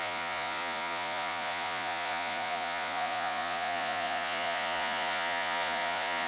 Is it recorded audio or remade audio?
remade